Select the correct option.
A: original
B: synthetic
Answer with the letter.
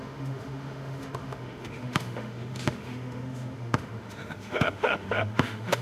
B